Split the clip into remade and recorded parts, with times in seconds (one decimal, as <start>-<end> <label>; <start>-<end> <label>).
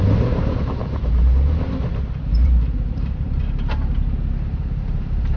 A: 0.0-0.8 remade; 0.8-2.2 recorded; 2.2-3.4 remade; 3.4-4.4 recorded; 4.4-5.4 remade